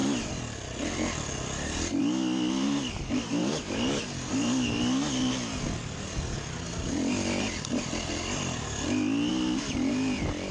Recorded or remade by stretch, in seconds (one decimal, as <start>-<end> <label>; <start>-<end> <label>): 0.0-3.4 recorded; 3.4-4.0 remade; 4.0-10.5 recorded